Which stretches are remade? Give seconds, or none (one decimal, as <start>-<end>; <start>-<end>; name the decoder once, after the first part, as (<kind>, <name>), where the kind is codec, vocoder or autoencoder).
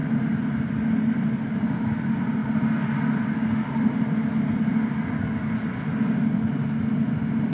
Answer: none